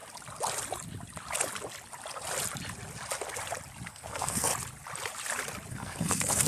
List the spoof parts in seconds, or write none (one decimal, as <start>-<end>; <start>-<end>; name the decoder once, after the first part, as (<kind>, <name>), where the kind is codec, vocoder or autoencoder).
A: 3.9-4.5 (codec, SNAC); 5.7-6.5

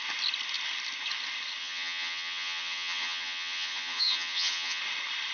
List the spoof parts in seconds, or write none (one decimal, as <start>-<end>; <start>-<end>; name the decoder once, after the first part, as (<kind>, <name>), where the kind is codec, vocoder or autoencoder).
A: 1.6-4.8 (vocoder, HiFi-GAN)

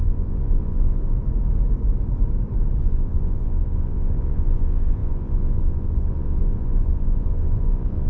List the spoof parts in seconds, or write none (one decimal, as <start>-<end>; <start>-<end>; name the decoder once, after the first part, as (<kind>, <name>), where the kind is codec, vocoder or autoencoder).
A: 0.0-1.0 (vocoder, Vocos); 2.8-8.1

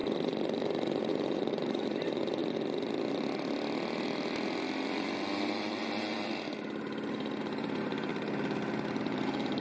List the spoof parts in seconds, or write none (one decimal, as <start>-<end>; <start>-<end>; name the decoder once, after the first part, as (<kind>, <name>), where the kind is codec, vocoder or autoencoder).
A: 1.0-2.4 (vocoder, BigVGAN v2); 7.4-8.1; 9.0-9.6

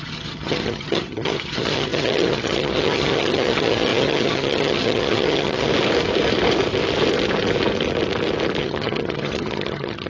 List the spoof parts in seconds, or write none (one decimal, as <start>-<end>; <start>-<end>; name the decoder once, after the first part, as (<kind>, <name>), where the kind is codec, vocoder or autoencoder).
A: 0.0-5.7 (vocoder, HiFi-GAN); 8.6-10.1

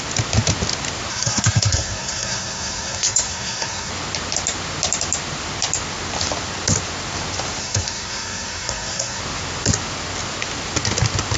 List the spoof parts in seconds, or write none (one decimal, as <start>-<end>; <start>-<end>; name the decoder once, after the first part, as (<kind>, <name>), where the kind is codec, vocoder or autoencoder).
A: 1.1-3.9 (codec, SNAC); 7.6-9.2